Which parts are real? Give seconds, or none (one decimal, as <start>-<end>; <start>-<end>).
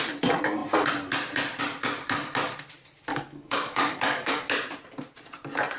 0.0-3.1; 4.5-5.8